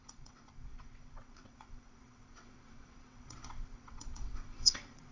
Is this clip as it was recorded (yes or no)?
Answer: no